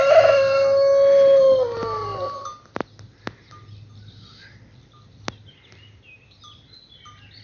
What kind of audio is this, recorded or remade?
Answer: recorded